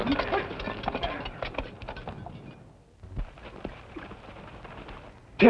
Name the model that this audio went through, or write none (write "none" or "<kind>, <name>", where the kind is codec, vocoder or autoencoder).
none